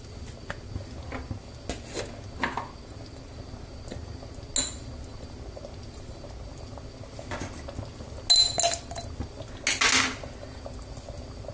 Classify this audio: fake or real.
real